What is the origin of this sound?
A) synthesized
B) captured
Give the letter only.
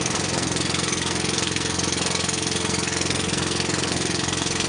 A